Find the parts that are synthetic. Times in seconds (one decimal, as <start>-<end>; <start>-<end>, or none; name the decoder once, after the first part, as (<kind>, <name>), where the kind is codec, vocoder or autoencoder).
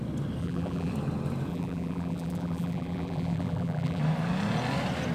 0.4-0.9 (vocoder, BigVGAN v2); 1.5-4.0